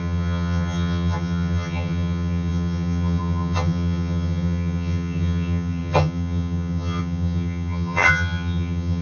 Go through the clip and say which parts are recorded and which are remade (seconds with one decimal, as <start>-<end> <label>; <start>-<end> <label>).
0.0-9.0 remade